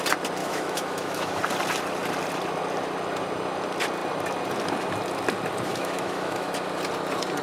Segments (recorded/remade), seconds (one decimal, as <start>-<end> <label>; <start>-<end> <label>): 0.0-0.4 recorded; 0.4-1.4 remade; 1.4-5.7 recorded; 5.7-6.5 remade; 6.5-7.4 recorded